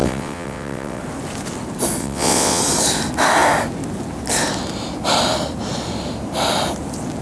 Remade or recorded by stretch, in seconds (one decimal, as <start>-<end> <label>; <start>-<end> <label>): 0.0-1.0 remade; 1.0-2.0 recorded; 2.0-2.6 remade; 2.6-7.2 recorded

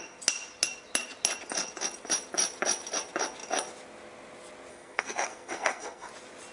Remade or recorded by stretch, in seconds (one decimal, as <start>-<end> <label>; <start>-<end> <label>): 0.0-4.7 recorded; 4.7-6.1 remade; 6.1-6.5 recorded

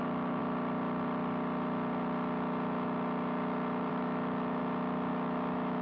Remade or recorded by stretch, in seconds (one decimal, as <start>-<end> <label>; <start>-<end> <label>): 0.0-0.4 remade; 0.4-3.9 recorded; 3.9-4.6 remade; 4.6-5.1 recorded; 5.1-5.8 remade

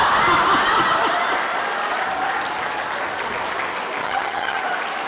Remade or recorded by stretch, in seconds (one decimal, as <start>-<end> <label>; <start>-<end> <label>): 0.0-4.0 recorded; 4.0-4.6 remade; 4.6-5.1 recorded

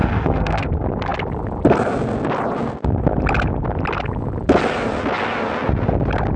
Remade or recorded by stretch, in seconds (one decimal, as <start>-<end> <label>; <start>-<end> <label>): 0.0-0.7 remade; 0.7-6.4 recorded